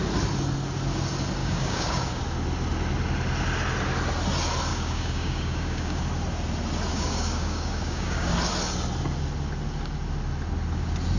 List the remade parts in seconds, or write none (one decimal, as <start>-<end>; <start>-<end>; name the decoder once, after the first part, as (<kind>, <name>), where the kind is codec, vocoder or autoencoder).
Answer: 1.4-2.2 (codec, DAC); 4.7-6.0; 6.9-8.3